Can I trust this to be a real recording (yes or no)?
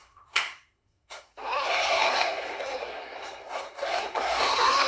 no